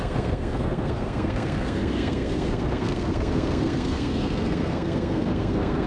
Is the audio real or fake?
fake